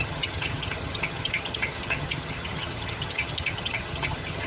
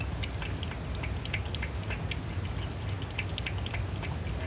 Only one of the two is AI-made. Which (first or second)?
first